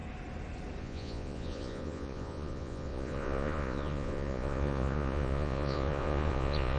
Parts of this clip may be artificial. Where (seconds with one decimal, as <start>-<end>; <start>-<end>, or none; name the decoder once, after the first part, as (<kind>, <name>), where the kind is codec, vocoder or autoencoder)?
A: 0.8-6.8 (vocoder, Vocos)